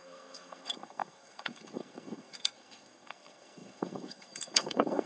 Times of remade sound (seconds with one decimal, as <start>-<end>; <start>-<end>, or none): 0.0-5.1